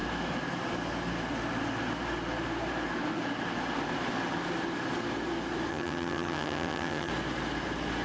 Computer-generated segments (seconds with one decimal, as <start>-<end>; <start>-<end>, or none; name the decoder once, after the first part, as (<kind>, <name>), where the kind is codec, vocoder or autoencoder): 5.7-7.1 (vocoder, HiFi-GAN)